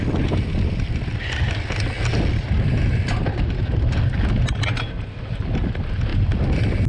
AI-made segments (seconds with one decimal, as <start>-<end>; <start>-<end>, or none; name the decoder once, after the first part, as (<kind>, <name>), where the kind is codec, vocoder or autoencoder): none